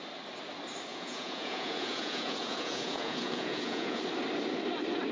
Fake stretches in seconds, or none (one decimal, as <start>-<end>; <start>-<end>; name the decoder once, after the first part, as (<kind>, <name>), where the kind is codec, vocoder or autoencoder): 0.9-4.0 (vocoder, Vocos)